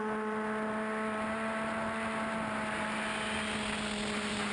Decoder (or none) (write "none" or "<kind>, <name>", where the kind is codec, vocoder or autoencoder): none